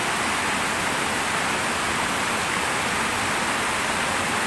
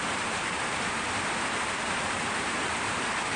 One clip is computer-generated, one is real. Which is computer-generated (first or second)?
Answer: second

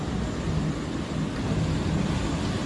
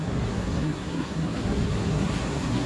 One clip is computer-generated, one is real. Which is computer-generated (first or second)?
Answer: second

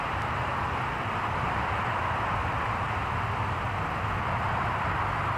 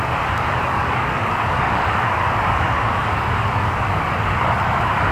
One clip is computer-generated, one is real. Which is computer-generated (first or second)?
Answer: second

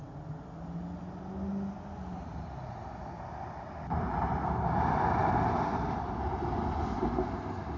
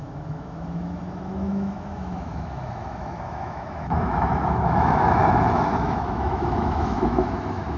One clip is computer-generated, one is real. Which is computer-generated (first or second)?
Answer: second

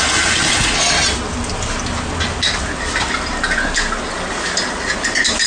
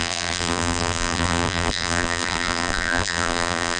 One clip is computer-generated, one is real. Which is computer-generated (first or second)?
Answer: second